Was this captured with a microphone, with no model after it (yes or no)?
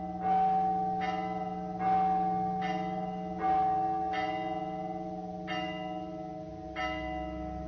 yes